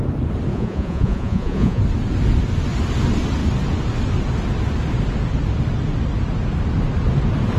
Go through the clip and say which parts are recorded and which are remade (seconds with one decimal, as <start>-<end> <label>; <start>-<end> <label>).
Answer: 0.0-0.5 recorded; 0.5-1.8 remade; 1.8-7.6 recorded